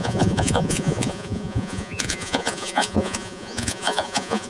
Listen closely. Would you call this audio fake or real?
fake